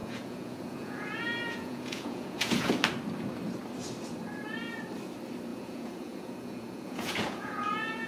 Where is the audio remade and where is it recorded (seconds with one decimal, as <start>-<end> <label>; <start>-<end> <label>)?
0.0-2.7 remade; 2.7-5.5 recorded; 5.5-8.1 remade